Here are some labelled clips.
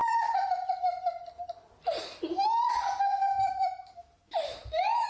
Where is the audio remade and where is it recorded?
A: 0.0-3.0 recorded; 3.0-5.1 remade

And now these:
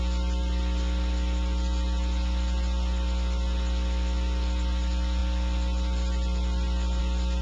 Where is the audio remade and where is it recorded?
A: 0.0-7.4 recorded

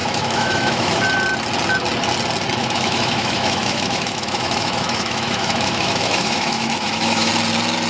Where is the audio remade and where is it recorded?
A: 0.0-1.0 remade; 1.0-2.6 recorded; 2.6-7.3 remade; 7.3-7.9 recorded

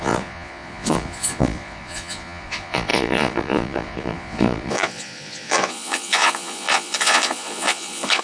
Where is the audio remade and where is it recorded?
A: 0.0-8.2 remade

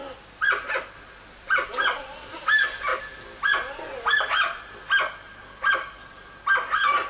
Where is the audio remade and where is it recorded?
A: 0.0-7.1 recorded

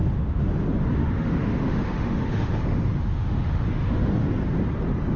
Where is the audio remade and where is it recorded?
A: 0.0-0.5 remade; 0.5-1.0 recorded; 1.0-4.1 remade; 4.1-5.2 recorded

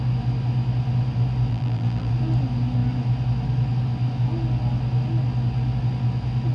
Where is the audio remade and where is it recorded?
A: 0.0-1.5 recorded; 1.5-2.1 remade; 2.1-6.5 recorded

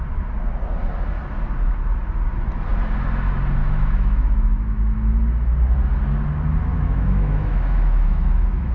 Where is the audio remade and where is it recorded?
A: 0.0-3.6 recorded; 3.6-5.1 remade; 5.1-6.7 recorded; 6.7-8.7 remade